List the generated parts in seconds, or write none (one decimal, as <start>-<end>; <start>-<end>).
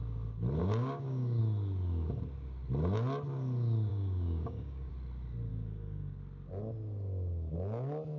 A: 0.6-1.4; 3.9-4.9; 5.5-6.2